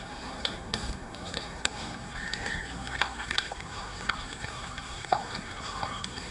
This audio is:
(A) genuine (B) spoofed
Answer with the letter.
B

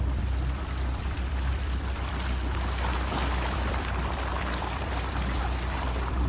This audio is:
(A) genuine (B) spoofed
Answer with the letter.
B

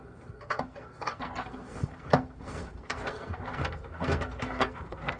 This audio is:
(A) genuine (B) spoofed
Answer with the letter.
B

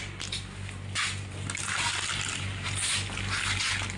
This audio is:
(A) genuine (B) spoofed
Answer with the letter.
A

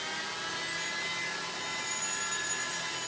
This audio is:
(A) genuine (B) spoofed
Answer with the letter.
A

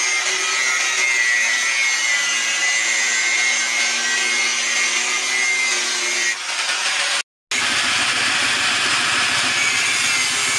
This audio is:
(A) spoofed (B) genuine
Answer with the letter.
B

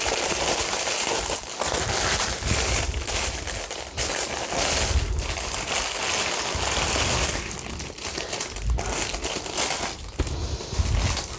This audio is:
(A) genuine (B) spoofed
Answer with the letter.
A